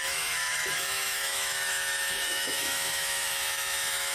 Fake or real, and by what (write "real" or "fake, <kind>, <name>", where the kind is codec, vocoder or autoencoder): fake, autoencoder, DAC-VAE